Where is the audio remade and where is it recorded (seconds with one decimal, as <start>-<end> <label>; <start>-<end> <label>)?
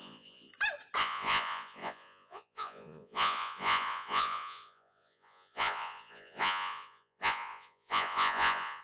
0.0-0.5 remade; 0.5-1.0 recorded; 1.0-8.8 remade